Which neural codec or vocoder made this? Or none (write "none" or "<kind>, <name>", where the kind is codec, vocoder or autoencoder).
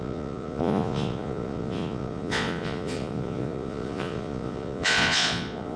vocoder, Vocos